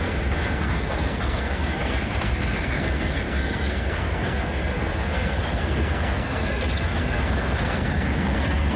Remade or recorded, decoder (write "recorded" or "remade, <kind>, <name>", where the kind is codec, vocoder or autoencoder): remade, codec, SNAC